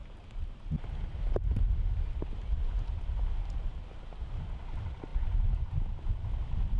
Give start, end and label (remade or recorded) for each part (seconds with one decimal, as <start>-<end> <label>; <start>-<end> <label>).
0.0-6.8 recorded